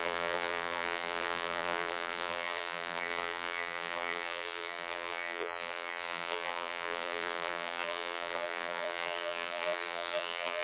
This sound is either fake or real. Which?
fake